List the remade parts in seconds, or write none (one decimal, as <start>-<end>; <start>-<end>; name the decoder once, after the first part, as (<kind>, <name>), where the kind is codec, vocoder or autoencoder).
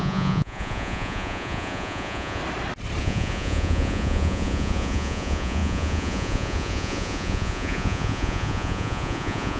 0.0-2.4 (vocoder, Vocos); 3.0-9.6